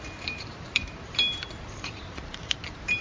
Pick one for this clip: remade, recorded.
remade